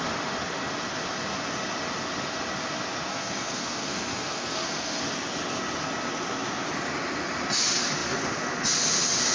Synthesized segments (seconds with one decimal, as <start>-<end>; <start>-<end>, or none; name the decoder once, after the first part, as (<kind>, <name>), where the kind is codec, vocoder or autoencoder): 3.1-5.0 (codec, SNAC)